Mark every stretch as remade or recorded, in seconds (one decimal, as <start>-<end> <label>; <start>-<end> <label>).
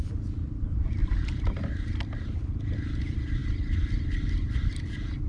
0.0-1.0 recorded; 1.0-2.0 remade; 2.0-5.3 recorded